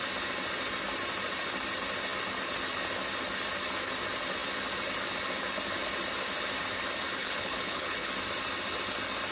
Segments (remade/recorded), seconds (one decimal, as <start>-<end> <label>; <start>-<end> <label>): 0.0-7.2 recorded; 7.2-8.1 remade; 8.1-9.3 recorded